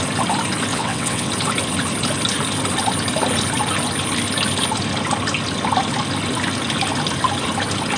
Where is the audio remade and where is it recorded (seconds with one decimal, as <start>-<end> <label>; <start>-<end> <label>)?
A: 0.0-0.7 recorded; 0.7-1.3 remade; 1.3-8.0 recorded